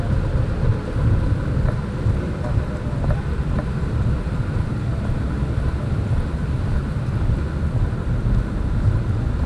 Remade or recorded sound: recorded